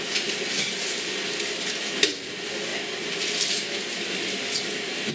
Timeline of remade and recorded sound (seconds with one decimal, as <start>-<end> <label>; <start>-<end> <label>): 0.0-5.1 recorded